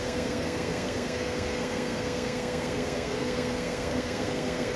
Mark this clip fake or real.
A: fake